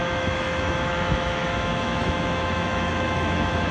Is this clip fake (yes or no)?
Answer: yes